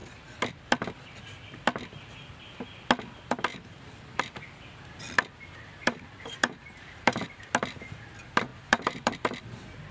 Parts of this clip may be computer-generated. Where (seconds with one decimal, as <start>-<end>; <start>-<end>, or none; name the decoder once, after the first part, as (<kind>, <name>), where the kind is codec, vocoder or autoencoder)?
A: 3.5-4.2 (vocoder, BigVGAN v2); 5.8-7.5; 8.5-9.1

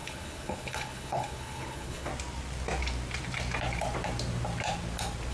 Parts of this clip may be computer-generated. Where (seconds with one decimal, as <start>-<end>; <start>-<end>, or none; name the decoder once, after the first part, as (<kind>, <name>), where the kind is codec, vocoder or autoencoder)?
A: 0.0-2.1 (codec, HILCodec)

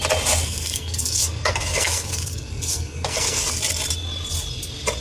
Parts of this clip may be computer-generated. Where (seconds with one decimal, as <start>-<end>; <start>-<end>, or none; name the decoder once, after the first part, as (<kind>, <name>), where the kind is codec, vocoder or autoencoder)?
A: 0.4-3.4 (codec, SNAC)

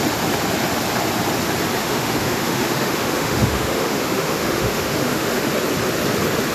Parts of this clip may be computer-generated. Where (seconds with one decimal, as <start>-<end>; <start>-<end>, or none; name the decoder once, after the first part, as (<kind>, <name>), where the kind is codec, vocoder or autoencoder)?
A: 1.8-5.5 (autoencoder, DAC-VAE)

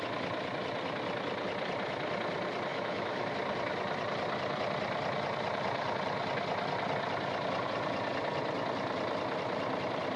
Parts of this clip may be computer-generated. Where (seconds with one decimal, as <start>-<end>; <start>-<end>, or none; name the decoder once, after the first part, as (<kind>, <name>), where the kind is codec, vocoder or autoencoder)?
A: 2.7-3.3 (autoencoder, DAC-VAE)

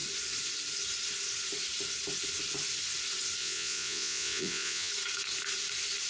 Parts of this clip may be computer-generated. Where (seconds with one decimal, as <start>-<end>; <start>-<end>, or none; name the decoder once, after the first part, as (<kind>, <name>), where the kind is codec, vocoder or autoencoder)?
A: 3.4-4.9 (vocoder, Vocos)

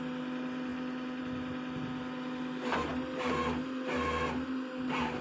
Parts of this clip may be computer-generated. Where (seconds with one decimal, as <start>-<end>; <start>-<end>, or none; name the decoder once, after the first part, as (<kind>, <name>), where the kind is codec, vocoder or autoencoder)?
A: none